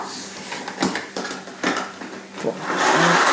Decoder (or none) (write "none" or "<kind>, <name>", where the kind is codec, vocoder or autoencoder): none